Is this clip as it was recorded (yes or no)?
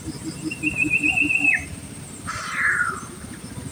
no